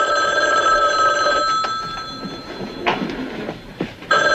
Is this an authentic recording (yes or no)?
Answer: no